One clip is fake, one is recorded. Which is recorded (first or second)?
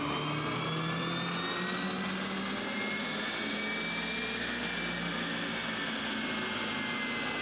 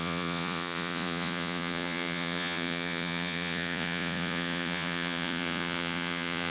first